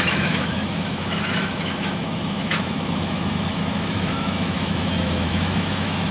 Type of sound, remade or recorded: remade